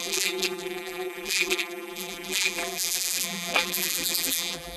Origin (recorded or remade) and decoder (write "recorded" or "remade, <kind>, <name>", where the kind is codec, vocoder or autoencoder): remade, vocoder, BigVGAN v2